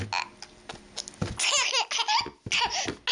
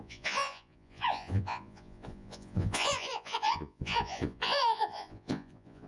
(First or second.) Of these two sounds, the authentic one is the first